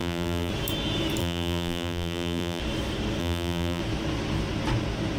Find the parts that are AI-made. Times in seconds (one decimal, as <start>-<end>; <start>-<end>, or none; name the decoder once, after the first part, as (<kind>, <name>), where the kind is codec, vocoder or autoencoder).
0.0-0.5 (vocoder, BigVGAN v2); 1.2-2.6; 3.2-3.8